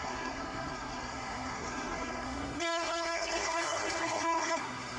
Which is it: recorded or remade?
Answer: remade